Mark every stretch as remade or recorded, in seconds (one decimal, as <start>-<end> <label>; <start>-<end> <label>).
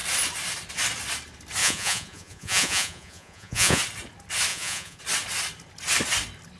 0.0-1.6 recorded; 1.6-3.8 remade; 3.8-4.5 recorded; 4.5-5.0 remade; 5.0-6.6 recorded